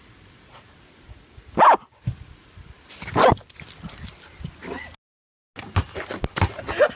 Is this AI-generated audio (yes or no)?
no